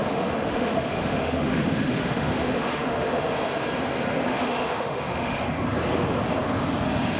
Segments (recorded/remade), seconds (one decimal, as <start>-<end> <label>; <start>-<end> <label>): 0.0-3.3 remade; 3.3-4.3 recorded; 4.3-5.4 remade; 5.4-7.2 recorded